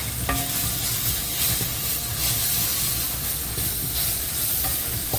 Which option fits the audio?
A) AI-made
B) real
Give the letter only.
B